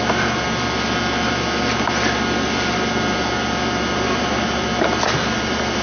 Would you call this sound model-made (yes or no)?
no